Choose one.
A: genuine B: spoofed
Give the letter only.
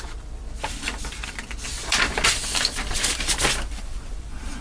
B